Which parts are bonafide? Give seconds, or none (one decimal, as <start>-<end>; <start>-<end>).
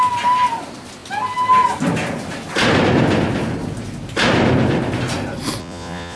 0.0-5.6